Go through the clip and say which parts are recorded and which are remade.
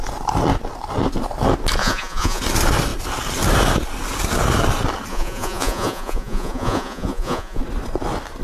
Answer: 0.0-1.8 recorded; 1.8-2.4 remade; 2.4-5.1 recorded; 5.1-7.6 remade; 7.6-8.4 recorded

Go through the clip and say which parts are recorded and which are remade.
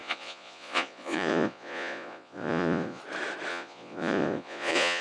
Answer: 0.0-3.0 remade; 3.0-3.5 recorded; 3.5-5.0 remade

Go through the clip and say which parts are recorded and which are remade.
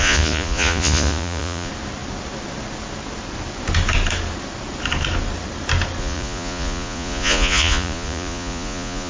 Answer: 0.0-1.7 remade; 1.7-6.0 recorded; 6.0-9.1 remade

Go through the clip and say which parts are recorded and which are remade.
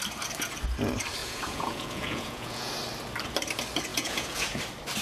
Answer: 0.0-1.2 recorded; 1.2-2.7 remade; 2.7-3.9 recorded; 3.9-4.6 remade; 4.6-5.0 recorded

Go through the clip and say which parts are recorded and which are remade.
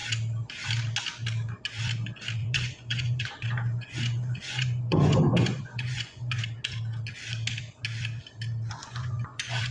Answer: 0.0-2.4 recorded; 2.4-6.4 remade; 6.4-8.8 recorded; 8.8-9.7 remade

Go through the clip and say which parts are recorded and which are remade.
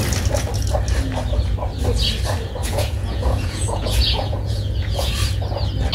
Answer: 0.0-2.6 recorded; 2.6-5.1 remade; 5.1-5.9 recorded